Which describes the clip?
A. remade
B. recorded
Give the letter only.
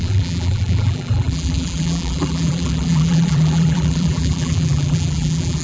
A